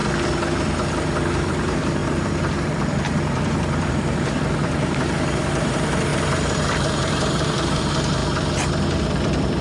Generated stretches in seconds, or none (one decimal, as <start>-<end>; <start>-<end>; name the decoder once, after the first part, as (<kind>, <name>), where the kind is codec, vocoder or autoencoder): 1.5-6.1 (vocoder, BigVGAN v2); 6.7-8.2; 9.0-9.6